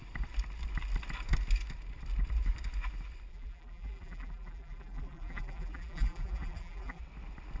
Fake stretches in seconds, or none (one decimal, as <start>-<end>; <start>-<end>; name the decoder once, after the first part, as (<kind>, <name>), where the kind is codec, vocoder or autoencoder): 3.3-7.0 (vocoder, BigVGAN v2)